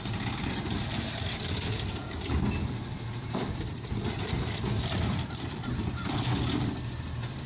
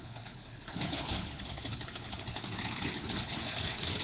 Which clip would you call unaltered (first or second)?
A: first